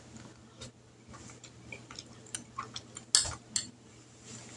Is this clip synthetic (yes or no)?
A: no